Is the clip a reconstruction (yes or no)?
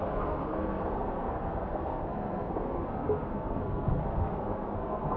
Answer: yes